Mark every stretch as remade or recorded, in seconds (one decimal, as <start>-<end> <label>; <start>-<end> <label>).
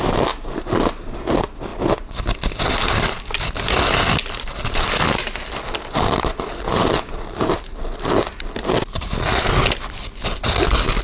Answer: 0.0-11.0 recorded